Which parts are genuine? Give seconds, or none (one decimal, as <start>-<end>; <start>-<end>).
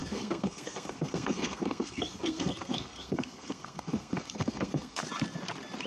5.0-5.9